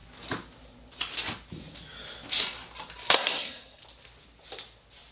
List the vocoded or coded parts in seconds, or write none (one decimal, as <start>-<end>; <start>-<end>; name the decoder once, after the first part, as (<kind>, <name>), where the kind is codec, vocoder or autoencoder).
3.1-3.8 (codec, SNAC)